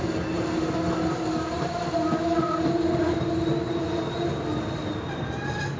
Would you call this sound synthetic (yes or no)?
no